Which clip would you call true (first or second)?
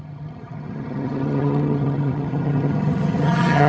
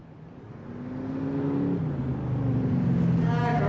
second